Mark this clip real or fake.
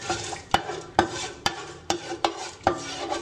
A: fake